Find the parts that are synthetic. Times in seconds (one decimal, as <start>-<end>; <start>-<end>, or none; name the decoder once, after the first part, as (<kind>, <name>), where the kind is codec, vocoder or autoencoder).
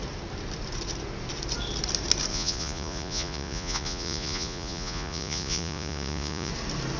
2.3-6.5 (vocoder, Vocos)